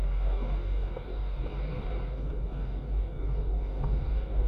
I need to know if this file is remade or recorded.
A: remade